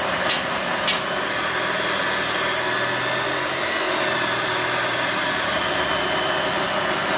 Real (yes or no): yes